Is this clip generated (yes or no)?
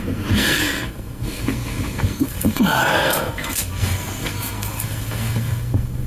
yes